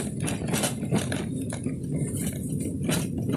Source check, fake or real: real